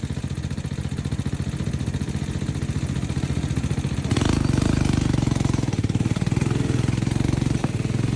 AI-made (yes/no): no